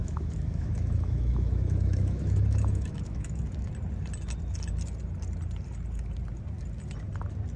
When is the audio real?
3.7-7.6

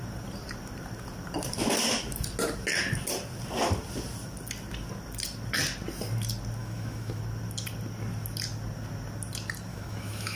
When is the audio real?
0.0-6.6; 7.2-9.7